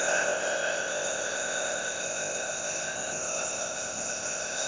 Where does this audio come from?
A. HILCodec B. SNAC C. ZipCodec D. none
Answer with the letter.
C